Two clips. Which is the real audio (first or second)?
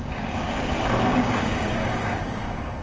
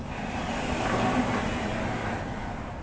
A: second